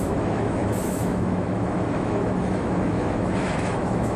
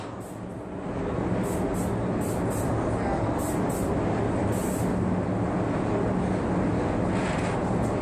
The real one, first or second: second